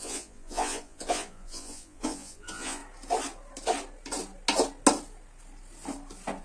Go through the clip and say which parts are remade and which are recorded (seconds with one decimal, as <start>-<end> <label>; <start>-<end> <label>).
0.0-2.8 remade; 2.8-6.4 recorded